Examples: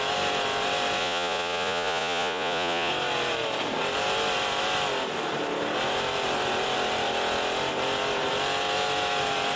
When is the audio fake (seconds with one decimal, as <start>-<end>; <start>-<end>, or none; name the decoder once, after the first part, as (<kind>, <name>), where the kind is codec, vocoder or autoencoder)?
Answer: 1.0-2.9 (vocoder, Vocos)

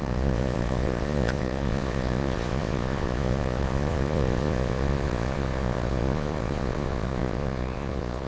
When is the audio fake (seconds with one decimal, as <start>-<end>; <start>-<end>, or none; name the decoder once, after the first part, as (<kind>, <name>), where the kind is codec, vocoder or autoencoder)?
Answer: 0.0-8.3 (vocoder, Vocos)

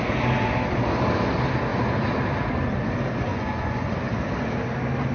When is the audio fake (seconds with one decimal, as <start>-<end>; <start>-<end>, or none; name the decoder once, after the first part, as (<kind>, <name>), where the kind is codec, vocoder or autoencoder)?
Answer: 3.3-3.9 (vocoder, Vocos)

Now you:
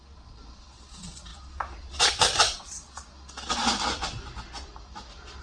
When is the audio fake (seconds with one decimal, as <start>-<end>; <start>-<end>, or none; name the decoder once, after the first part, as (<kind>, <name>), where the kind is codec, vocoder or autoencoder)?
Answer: 0.0-3.6 (vocoder, Vocos)

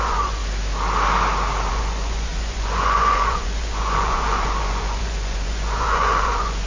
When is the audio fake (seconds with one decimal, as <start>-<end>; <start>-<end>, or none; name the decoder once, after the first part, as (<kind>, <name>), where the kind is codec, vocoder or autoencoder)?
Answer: 0.0-0.4 (vocoder, Vocos); 1.7-6.7

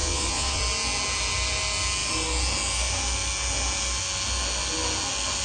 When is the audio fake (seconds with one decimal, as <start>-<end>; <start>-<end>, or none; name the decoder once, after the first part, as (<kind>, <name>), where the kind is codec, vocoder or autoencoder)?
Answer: 0.0-0.6 (vocoder, Vocos)

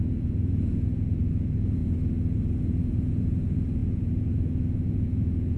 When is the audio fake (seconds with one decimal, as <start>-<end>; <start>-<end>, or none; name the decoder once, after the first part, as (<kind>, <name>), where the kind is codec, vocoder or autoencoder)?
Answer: 0.0-1.8 (vocoder, Vocos); 2.8-5.6